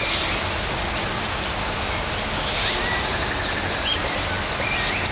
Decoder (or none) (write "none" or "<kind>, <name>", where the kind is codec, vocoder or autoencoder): none